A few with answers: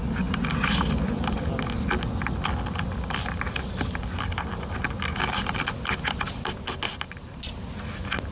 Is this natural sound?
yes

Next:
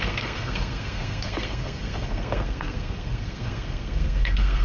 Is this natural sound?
no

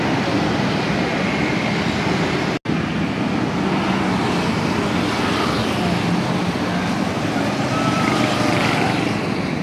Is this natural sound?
yes